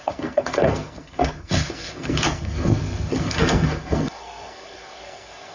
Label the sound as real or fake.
fake